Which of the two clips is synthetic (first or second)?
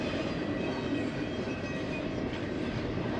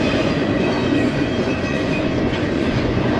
second